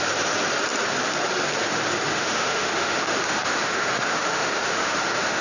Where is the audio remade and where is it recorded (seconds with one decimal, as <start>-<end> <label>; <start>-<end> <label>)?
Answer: 0.0-2.1 recorded; 2.1-5.4 remade